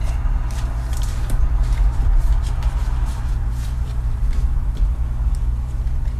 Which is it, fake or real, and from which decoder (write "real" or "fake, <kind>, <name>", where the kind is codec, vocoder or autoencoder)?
fake, vocoder, BigVGAN v2